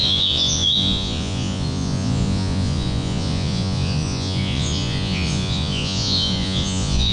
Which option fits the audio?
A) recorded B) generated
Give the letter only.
B